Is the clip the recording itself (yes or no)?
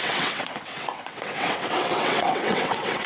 no